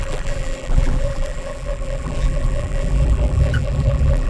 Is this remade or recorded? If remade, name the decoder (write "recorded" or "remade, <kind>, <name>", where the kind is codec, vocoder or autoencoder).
remade, vocoder, BigVGAN v2